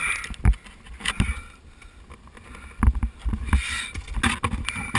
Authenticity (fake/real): real